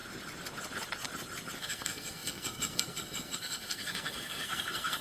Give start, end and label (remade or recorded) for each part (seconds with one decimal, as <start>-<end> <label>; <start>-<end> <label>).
0.0-1.6 recorded; 1.6-5.0 remade